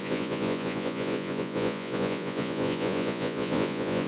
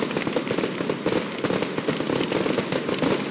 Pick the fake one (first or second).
first